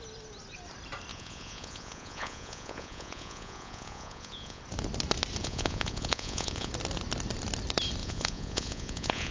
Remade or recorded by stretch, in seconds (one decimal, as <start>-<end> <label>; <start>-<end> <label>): 0.0-1.1 recorded; 1.1-4.6 remade; 4.6-5.4 recorded; 5.4-6.7 remade; 6.7-8.0 recorded; 8.0-9.3 remade